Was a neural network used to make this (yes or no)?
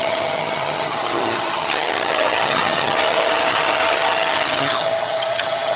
yes